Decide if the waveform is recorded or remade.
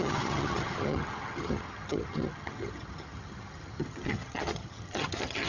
remade